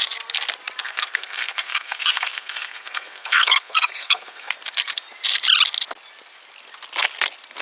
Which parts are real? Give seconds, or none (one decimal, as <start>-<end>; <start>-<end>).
0.0-0.8; 4.5-7.6